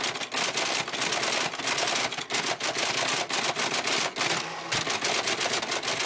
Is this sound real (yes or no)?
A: yes